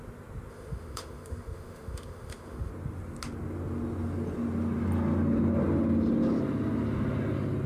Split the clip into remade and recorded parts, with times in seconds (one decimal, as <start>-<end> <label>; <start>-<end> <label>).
0.0-0.5 recorded; 0.5-2.7 remade; 2.7-7.7 recorded